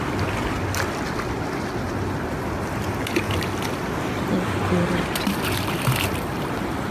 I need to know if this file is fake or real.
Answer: real